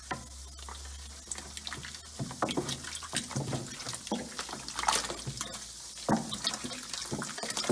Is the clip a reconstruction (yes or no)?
no